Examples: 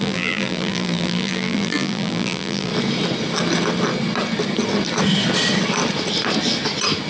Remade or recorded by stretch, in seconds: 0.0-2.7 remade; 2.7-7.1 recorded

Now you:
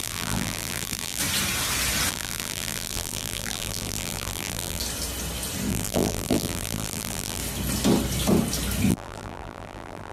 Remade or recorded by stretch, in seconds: 0.0-1.2 remade; 1.2-2.1 recorded; 2.1-4.8 remade; 4.8-5.7 recorded; 5.7-7.4 remade; 7.4-8.9 recorded; 8.9-10.1 remade

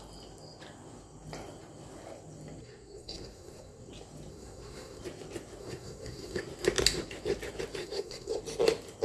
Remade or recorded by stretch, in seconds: 0.0-2.6 recorded; 2.6-3.9 remade; 3.9-4.3 recorded; 4.3-5.0 remade; 5.0-5.6 recorded; 5.6-6.4 remade; 6.4-7.8 recorded; 7.8-8.4 remade; 8.4-9.0 recorded

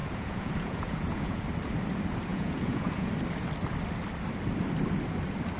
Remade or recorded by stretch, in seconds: 0.0-1.4 remade; 1.4-2.3 recorded; 2.3-3.1 remade; 3.1-5.6 recorded

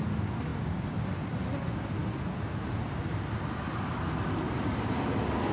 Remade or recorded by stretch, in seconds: 0.0-5.5 recorded

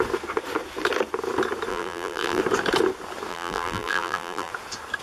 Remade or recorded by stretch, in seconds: 0.0-1.7 recorded; 1.7-2.4 remade; 2.4-3.3 recorded; 3.3-4.5 remade; 4.5-5.0 recorded